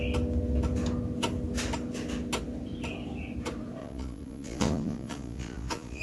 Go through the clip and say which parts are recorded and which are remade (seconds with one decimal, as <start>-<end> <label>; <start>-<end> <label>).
0.0-3.8 recorded; 3.8-6.0 remade